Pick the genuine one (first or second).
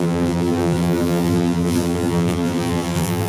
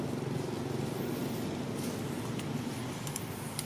second